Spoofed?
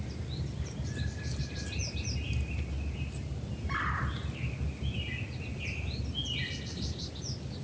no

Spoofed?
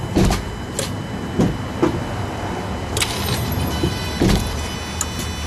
no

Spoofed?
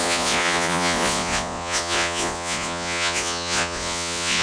yes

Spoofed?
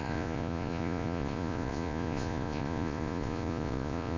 yes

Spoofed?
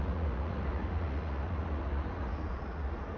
yes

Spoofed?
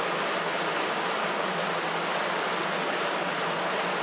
no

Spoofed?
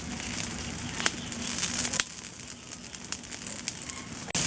no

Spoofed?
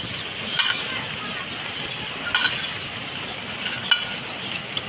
no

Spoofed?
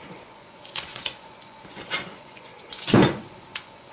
yes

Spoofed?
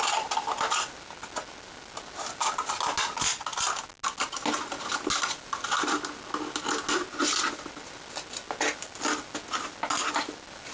no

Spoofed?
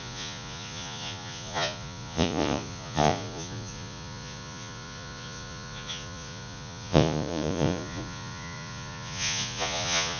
yes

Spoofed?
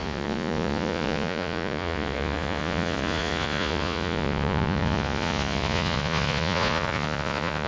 yes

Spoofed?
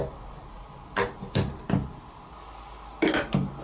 no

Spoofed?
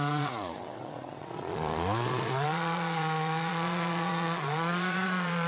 yes